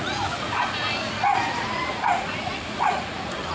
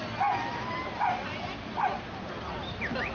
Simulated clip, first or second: first